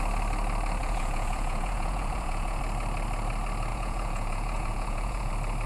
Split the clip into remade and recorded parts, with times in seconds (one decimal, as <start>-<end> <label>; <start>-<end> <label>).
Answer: 0.0-0.8 recorded; 0.8-2.6 remade; 2.6-3.7 recorded; 3.7-5.3 remade; 5.3-5.7 recorded

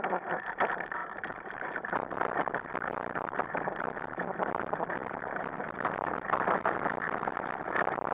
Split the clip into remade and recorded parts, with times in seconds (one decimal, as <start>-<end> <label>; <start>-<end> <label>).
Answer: 0.0-8.1 recorded

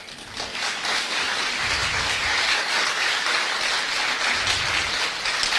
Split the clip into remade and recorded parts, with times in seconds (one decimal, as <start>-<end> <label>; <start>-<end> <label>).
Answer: 0.0-0.5 recorded; 0.5-1.4 remade; 1.4-1.8 recorded; 1.8-3.6 remade; 3.6-5.6 recorded

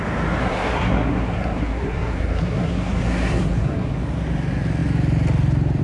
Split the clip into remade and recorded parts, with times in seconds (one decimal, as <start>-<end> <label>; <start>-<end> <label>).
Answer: 0.0-0.4 recorded; 0.4-3.9 remade; 3.9-5.8 recorded

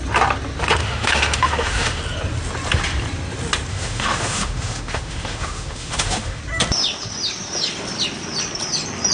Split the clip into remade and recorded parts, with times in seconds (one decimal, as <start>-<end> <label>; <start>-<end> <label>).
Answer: 0.0-0.8 recorded; 0.8-2.0 remade; 2.0-3.7 recorded; 3.7-6.4 remade; 6.4-9.1 recorded